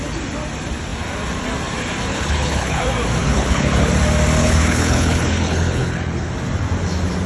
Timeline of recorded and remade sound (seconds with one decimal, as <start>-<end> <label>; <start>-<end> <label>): 0.0-2.1 recorded; 2.1-2.8 remade; 2.8-3.2 recorded; 3.2-3.9 remade; 3.9-4.4 recorded; 4.4-6.3 remade; 6.3-7.3 recorded